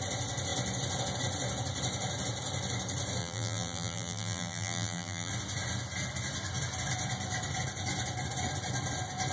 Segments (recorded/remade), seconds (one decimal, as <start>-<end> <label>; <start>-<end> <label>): 0.0-3.2 recorded; 3.2-5.3 remade; 5.3-9.3 recorded